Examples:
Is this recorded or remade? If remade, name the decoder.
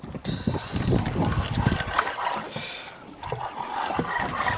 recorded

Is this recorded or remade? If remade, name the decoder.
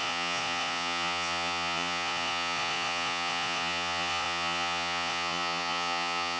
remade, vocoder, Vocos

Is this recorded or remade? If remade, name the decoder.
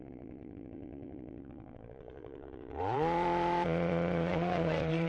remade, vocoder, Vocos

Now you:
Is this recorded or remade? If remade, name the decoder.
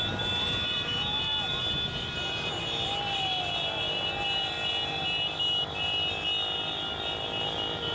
recorded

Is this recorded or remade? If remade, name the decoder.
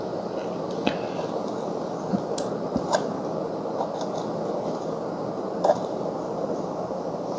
recorded